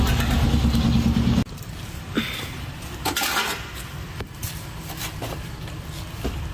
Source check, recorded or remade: recorded